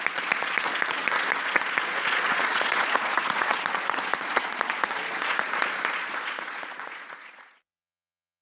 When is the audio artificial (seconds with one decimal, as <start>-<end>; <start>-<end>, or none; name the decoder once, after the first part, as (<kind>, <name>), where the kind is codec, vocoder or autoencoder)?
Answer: 0.0-8.4 (vocoder, Vocos)